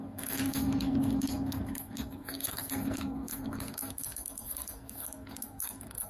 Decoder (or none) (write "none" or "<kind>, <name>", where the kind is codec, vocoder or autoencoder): codec, SNAC